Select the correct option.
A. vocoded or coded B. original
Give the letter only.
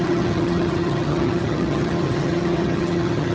A